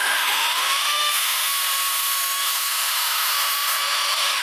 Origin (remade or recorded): remade